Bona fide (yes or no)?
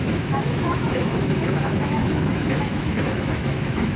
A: no